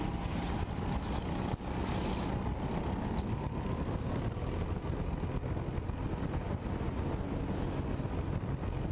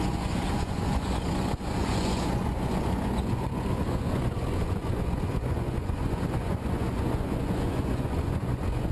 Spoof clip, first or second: second